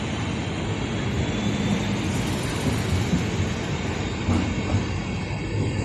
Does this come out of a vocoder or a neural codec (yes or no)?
no